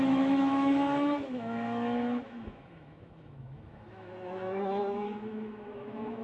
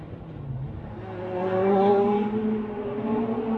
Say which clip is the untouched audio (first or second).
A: second